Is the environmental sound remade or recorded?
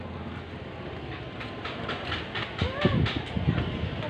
recorded